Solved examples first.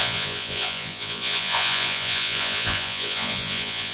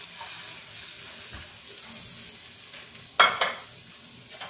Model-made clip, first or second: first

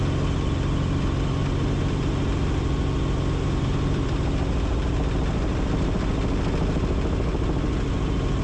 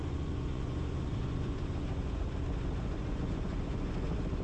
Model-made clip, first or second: second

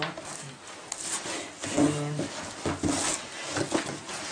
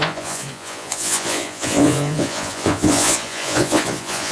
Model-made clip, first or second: second